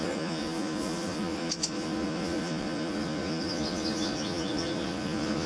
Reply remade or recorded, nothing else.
remade